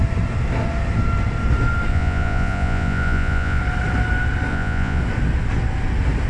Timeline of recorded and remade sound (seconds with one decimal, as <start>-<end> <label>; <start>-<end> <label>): 0.0-1.9 recorded; 1.9-3.6 remade; 3.6-4.5 recorded; 4.5-5.0 remade; 5.0-6.3 recorded